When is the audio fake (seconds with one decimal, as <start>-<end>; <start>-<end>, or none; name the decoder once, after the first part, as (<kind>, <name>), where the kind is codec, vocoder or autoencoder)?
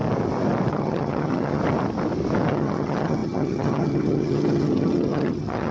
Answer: 0.7-1.6 (vocoder, HiFi-GAN); 2.5-5.7